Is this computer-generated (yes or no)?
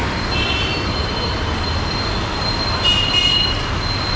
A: no